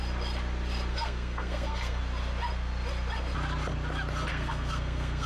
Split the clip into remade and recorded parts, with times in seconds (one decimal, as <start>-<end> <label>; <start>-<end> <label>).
0.0-0.9 recorded; 0.9-2.0 remade; 2.0-4.3 recorded; 4.3-5.3 remade